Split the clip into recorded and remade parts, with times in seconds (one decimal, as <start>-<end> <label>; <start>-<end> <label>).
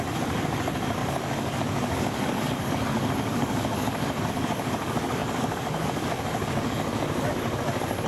0.0-8.1 remade